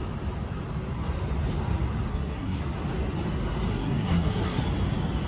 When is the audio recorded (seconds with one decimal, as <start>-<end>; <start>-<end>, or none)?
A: 0.0-2.1; 2.6-3.7; 4.6-5.3